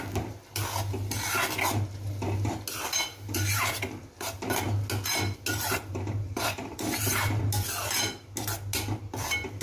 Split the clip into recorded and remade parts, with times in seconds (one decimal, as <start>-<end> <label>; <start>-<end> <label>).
0.0-3.1 recorded; 3.1-3.7 remade; 3.7-5.5 recorded; 5.5-7.4 remade; 7.4-9.6 recorded